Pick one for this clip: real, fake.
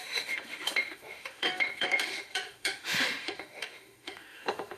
fake